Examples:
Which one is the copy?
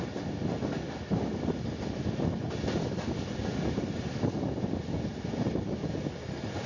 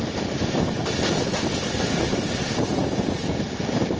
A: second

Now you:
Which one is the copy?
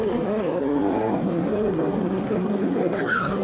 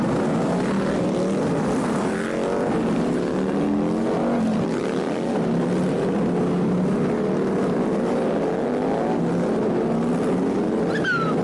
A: first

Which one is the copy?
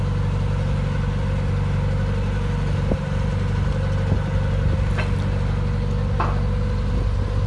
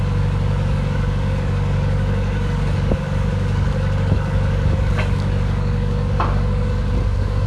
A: second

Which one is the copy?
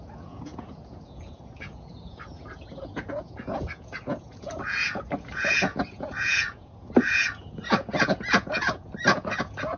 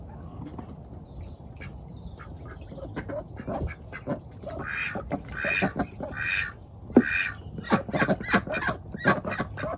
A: first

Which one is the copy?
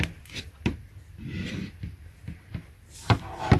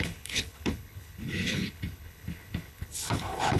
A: second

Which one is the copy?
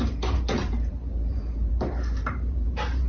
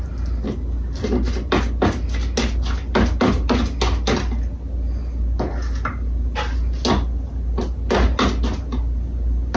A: first